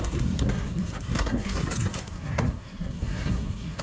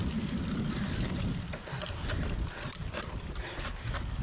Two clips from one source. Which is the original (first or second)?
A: second